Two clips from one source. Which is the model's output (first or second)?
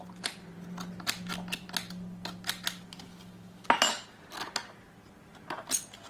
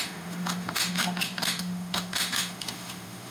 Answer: second